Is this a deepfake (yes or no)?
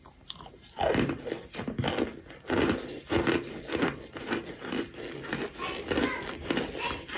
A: no